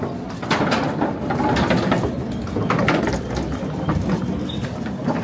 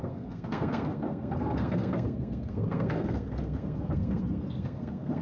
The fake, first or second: second